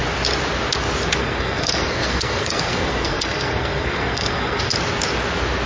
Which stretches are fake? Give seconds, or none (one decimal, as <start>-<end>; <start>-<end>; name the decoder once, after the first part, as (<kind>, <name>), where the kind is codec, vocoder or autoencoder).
1.2-4.6 (codec, SNAC)